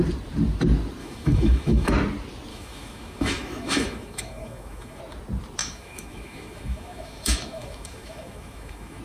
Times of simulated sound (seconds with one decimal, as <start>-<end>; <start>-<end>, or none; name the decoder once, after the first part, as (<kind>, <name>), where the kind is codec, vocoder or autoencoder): 1.0-1.9 (autoencoder, DAC-VAE); 2.5-5.0; 5.6-9.0